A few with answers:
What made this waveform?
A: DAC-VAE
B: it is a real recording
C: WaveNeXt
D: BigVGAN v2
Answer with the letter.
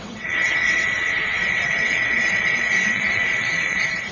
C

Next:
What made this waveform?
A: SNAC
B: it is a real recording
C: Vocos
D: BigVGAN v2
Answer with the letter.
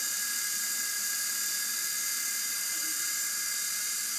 B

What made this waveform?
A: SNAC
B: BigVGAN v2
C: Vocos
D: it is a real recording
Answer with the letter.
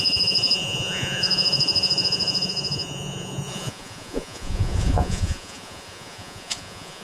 C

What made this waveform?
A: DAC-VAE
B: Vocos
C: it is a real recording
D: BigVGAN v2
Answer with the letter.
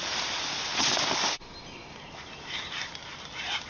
C